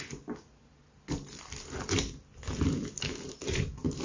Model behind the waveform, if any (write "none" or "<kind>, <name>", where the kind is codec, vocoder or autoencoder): none